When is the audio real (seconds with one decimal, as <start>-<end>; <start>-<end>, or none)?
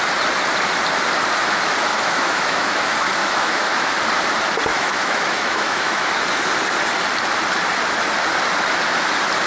0.0-1.9; 2.8-3.2; 3.9-4.7; 6.1-9.5